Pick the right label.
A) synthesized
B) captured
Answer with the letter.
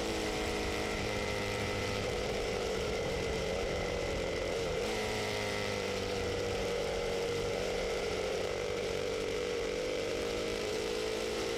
A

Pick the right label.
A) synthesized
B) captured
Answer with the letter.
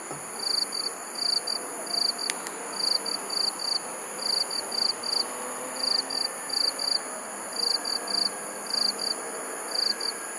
B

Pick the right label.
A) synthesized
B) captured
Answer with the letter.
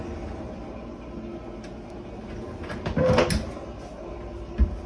B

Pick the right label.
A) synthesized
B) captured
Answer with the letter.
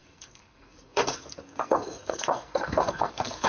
A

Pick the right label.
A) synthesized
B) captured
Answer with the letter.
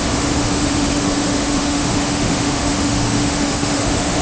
A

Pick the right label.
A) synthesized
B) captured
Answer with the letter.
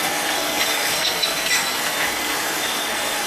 A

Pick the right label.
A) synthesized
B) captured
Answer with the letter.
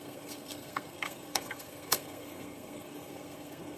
A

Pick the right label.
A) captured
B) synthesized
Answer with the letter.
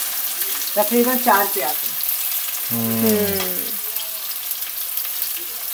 A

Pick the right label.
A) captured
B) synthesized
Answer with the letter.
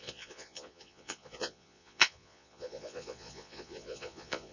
B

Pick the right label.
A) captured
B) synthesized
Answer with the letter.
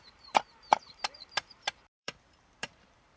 B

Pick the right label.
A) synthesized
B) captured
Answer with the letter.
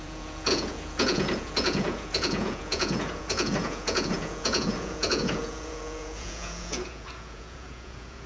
A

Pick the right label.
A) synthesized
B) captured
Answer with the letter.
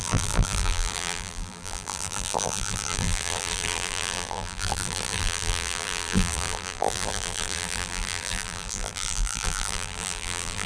A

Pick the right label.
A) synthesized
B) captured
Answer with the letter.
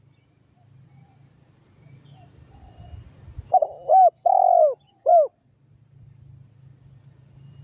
B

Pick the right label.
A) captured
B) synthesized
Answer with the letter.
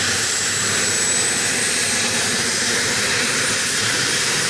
B